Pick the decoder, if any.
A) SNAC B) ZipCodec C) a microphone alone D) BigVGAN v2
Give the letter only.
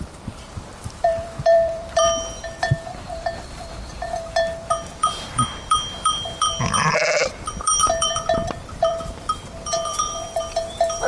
D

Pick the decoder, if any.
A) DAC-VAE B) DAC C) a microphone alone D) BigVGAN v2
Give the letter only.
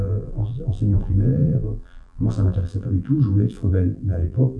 D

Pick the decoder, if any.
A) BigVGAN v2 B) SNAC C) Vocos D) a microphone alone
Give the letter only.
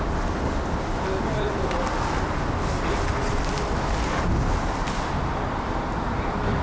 D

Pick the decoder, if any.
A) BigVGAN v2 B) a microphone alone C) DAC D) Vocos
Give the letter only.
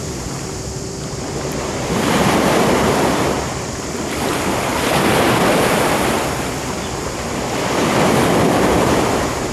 A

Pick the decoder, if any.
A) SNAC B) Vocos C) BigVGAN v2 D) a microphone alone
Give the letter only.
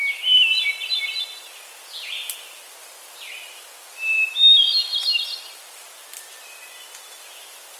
D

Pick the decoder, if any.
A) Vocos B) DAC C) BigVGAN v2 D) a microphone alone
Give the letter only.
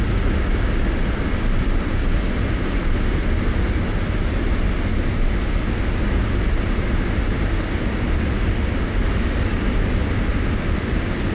D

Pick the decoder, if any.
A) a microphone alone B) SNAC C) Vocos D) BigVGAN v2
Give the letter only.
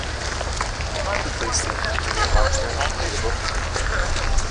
A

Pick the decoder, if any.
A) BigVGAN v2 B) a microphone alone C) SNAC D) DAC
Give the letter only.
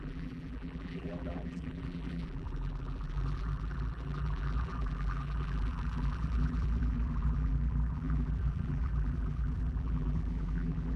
A